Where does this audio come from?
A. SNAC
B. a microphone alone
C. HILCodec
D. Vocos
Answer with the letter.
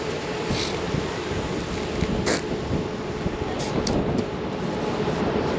B